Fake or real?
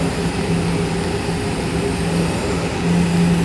real